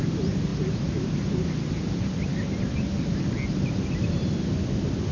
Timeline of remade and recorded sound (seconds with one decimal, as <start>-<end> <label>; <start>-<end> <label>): 0.0-5.1 recorded